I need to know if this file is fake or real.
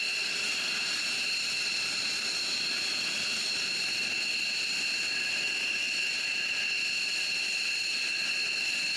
real